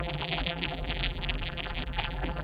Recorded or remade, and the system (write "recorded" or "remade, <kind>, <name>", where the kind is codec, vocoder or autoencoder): remade, vocoder, BigVGAN v2